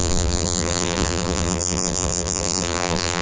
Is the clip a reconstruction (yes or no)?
yes